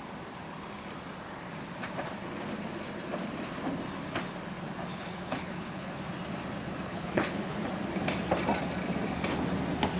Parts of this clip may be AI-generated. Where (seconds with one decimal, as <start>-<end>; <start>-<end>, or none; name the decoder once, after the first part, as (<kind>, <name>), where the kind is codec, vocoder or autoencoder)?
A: 4.9-5.9 (codec, HILCodec); 6.9-7.7